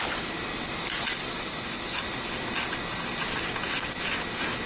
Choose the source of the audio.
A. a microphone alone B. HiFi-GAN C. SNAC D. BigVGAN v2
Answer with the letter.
A